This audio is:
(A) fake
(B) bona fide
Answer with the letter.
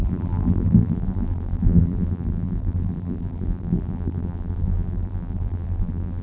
A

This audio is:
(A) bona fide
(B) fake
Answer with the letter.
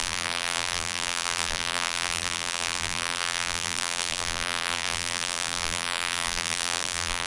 B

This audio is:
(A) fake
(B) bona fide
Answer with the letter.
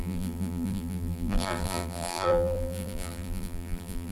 A